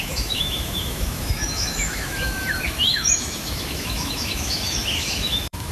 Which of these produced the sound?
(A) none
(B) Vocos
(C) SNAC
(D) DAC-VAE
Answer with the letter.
D